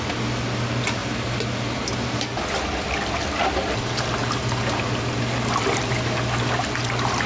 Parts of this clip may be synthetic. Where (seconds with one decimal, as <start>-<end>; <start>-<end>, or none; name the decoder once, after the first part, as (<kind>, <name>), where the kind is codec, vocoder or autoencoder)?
none